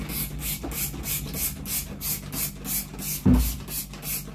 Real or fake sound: real